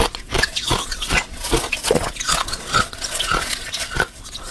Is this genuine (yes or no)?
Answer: no